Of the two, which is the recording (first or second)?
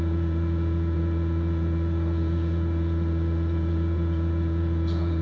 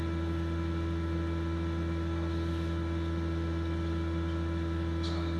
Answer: second